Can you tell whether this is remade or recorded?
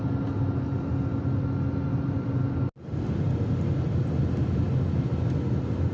recorded